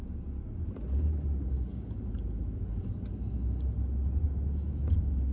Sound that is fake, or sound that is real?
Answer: real